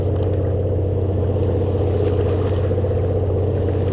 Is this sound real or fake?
real